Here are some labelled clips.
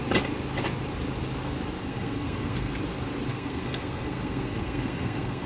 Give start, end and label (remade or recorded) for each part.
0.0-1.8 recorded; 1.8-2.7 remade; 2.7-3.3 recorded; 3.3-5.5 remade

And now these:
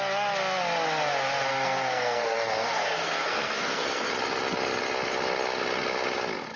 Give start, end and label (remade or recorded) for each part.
0.0-1.5 recorded; 1.5-4.1 remade; 4.1-6.6 recorded